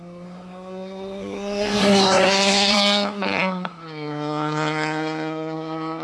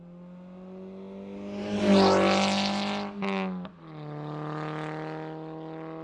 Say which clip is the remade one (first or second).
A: first